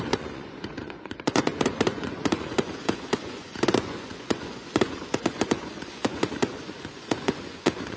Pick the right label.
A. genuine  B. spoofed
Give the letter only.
B